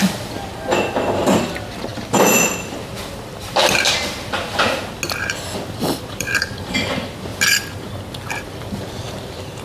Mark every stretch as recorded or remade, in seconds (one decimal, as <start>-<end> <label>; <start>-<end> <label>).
0.0-1.9 remade; 1.9-2.7 recorded; 2.7-3.6 remade; 3.6-5.2 recorded; 5.2-7.3 remade; 7.3-8.3 recorded; 8.3-9.6 remade